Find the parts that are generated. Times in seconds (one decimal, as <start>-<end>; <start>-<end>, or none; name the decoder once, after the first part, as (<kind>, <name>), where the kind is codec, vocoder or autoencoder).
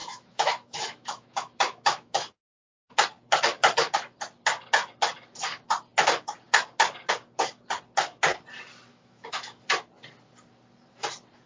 0.0-2.3 (autoencoder, DAC-VAE); 8.9-9.6